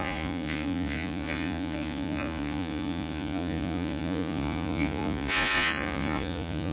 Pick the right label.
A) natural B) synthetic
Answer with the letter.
B